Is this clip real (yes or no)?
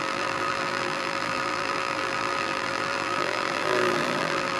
no